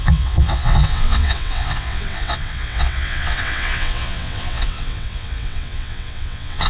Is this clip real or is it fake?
fake